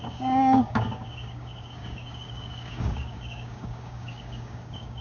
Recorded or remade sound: remade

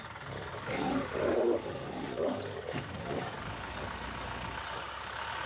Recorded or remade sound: remade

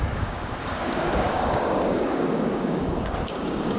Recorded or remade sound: remade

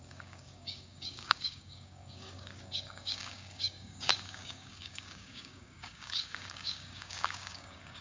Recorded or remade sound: remade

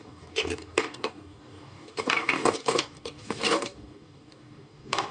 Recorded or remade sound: remade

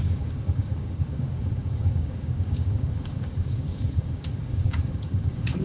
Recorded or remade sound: remade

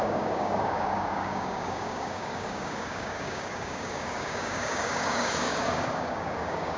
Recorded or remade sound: remade